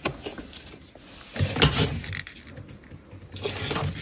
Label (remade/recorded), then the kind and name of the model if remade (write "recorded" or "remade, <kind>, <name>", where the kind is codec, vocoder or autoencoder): recorded